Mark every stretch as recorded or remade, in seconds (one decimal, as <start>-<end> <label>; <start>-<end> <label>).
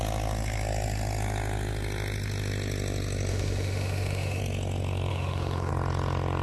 0.0-3.3 recorded; 3.3-4.4 remade; 4.4-5.1 recorded; 5.1-5.7 remade; 5.7-6.4 recorded